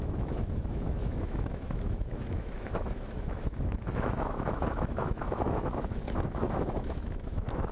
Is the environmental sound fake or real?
fake